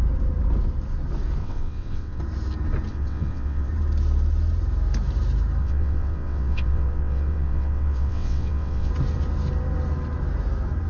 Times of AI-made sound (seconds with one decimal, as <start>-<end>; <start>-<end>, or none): 1.4-2.2; 2.9-3.7; 5.6-8.9